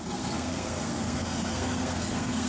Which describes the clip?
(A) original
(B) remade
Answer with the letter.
B